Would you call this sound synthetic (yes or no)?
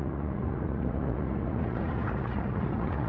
yes